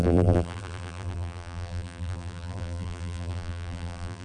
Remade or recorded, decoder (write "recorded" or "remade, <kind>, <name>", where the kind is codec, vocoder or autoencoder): remade, vocoder, BigVGAN v2